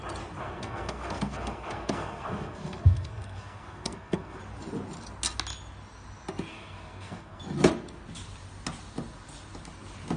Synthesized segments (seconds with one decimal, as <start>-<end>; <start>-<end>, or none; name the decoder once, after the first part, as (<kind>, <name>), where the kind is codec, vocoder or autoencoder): 0.4-4.4 (codec, SNAC); 6.5-7.4